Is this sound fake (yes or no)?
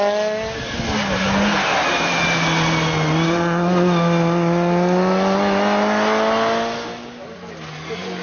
no